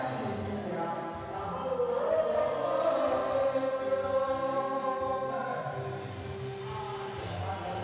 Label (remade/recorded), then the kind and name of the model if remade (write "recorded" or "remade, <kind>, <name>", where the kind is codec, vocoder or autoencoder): recorded